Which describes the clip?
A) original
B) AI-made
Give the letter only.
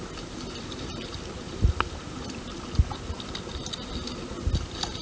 A